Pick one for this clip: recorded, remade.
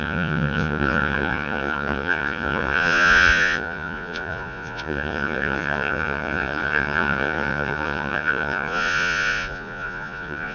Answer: remade